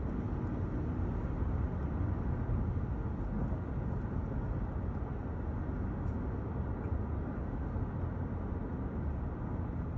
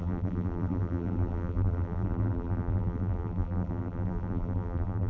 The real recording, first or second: first